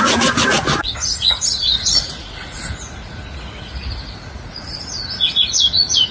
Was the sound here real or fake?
fake